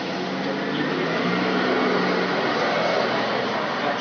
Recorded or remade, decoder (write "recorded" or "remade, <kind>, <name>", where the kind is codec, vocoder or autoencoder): recorded